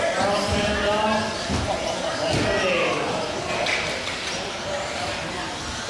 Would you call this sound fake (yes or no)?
no